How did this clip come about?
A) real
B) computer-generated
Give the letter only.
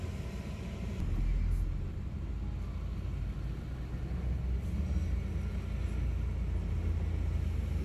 A